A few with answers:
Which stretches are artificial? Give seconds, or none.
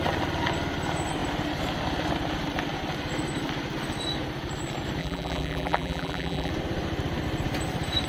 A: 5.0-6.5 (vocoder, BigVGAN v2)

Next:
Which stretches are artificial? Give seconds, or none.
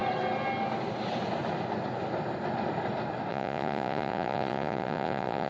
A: 3.3-5.5 (vocoder, Vocos)